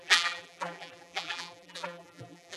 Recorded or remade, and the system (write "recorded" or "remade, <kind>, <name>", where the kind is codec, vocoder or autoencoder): remade, vocoder, BigVGAN v2